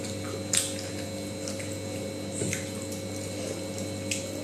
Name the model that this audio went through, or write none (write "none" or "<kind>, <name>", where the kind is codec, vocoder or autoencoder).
none